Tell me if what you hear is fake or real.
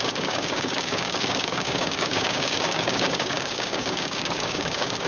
fake